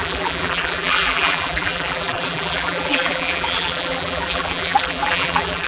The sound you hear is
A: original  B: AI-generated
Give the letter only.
B